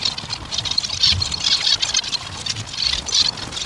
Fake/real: real